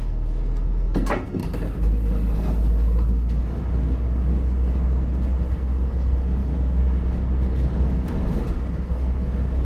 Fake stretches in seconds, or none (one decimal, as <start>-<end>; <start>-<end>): 0.0-9.6